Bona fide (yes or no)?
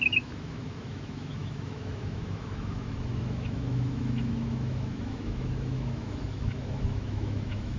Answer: no